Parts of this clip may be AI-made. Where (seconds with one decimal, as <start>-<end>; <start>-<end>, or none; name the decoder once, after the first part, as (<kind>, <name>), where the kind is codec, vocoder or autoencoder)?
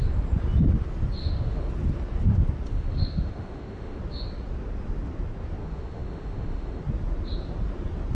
1.2-1.7 (autoencoder, DAC-VAE); 2.7-4.0; 5.6-6.8